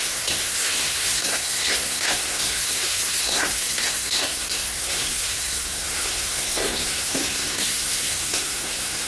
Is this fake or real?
fake